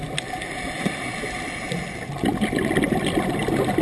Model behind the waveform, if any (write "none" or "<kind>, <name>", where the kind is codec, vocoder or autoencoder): none